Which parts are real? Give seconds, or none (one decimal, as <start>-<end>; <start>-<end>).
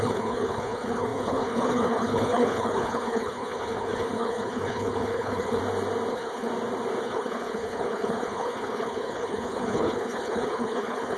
5.6-6.1; 6.5-7.0